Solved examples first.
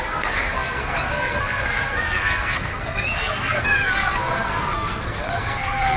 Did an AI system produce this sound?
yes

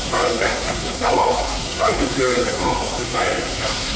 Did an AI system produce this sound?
yes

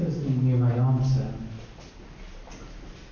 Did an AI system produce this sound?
no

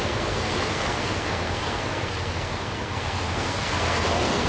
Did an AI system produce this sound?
yes